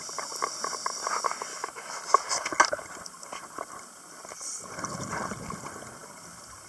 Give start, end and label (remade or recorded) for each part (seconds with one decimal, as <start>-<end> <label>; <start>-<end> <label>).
0.0-1.5 recorded; 1.5-2.0 remade; 2.0-6.7 recorded